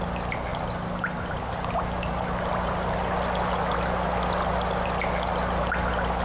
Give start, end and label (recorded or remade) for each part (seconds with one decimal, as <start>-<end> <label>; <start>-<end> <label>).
0.0-6.2 recorded